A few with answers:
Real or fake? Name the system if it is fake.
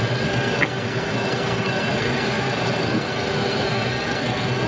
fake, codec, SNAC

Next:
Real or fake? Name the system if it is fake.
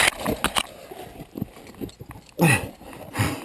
real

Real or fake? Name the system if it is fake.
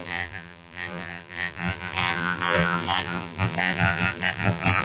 fake, vocoder, BigVGAN v2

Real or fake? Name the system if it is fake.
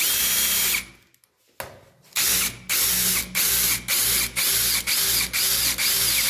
real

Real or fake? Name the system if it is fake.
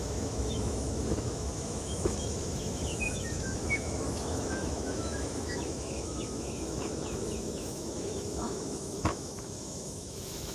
fake, autoencoder, DAC-VAE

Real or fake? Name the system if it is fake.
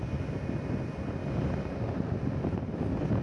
real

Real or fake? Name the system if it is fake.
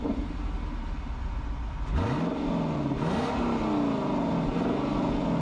real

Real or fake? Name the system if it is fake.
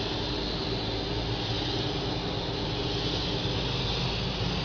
real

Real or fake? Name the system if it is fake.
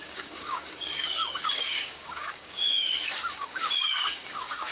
fake, codec, DAC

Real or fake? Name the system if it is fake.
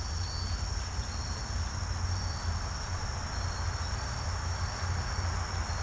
real